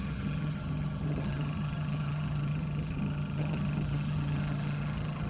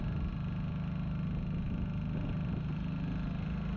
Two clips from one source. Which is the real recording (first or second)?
second